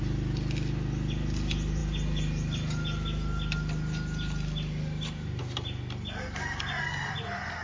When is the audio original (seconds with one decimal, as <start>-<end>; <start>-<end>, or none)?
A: 0.0-7.6

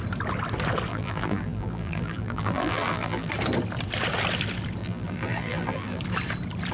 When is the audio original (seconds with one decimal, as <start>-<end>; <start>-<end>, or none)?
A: 0.0-0.9; 3.3-4.8; 6.0-6.7

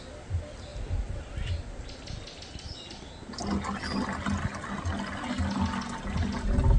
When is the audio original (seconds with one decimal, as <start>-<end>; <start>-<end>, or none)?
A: 0.0-6.8

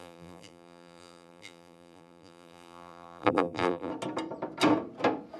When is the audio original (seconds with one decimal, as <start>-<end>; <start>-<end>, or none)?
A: 3.9-5.4

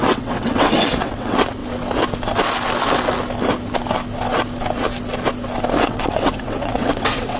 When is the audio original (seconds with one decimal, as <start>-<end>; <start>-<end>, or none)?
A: 1.6-5.8